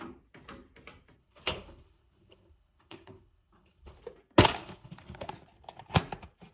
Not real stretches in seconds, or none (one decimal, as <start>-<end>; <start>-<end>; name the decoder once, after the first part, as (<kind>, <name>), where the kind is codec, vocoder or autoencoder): 1.2-4.0 (codec, HILCodec); 4.6-5.3